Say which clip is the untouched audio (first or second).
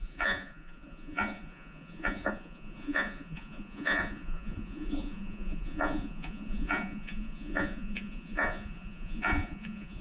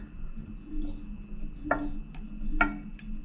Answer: second